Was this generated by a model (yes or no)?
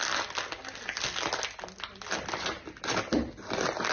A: no